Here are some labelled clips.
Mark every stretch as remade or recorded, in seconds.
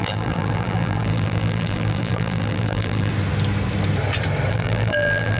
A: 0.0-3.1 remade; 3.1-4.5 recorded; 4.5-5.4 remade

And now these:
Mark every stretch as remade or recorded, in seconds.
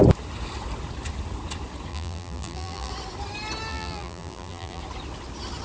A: 0.0-1.9 recorded; 1.9-2.9 remade; 2.9-3.7 recorded; 3.7-4.8 remade; 4.8-5.6 recorded